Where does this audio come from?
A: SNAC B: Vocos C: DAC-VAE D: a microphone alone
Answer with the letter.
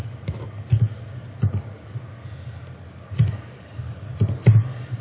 D